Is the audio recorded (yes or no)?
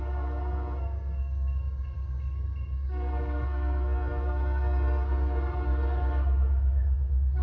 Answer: no